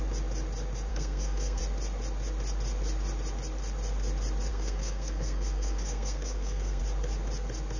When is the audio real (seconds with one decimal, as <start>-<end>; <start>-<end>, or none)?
0.0-0.9; 1.6-4.5; 6.8-7.8